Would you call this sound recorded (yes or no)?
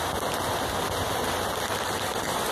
yes